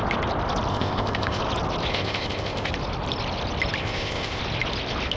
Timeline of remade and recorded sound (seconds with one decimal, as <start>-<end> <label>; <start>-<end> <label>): 0.0-0.7 recorded; 0.7-1.4 remade; 1.4-1.9 recorded; 1.9-2.7 remade; 2.7-3.8 recorded; 3.8-4.4 remade; 4.4-5.2 recorded